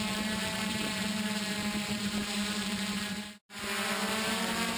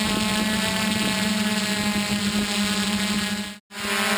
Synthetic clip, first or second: first